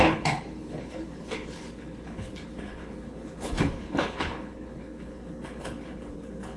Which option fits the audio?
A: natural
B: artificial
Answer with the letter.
B